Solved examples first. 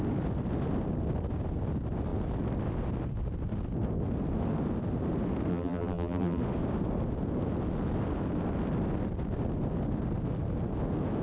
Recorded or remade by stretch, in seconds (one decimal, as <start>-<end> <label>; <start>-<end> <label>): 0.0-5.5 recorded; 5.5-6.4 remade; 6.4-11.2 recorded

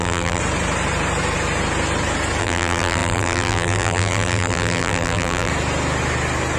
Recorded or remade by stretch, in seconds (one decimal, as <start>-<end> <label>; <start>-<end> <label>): 0.0-0.4 remade; 0.4-2.4 recorded; 2.4-5.5 remade; 5.5-6.6 recorded

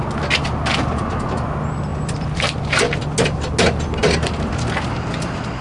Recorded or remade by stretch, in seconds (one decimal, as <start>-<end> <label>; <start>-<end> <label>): 0.0-1.9 recorded; 1.9-3.0 remade; 3.0-4.0 recorded; 4.0-5.6 remade

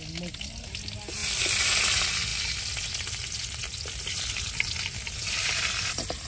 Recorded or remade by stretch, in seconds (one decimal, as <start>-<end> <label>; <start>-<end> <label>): 0.0-1.2 recorded; 1.2-1.7 remade; 1.7-6.3 recorded

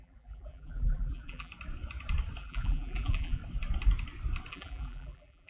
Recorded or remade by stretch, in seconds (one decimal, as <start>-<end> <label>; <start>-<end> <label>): 0.0-1.5 remade; 1.5-2.4 recorded; 2.4-3.4 remade; 3.4-4.5 recorded; 4.5-5.5 remade

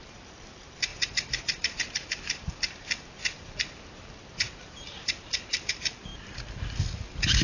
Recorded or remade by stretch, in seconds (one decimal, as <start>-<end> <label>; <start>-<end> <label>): 0.0-6.1 remade; 6.1-7.4 recorded

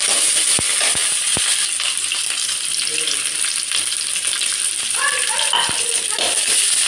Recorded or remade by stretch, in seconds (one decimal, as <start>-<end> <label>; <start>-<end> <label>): 0.0-6.9 remade

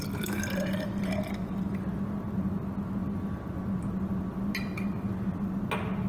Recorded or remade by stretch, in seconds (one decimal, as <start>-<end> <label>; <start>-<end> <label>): 0.0-6.1 recorded